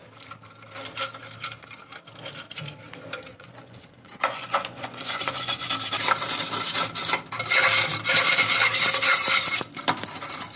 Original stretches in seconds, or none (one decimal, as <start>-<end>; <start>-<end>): 0.0-3.3; 5.7-10.6